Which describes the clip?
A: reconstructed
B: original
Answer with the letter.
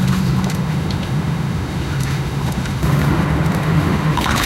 A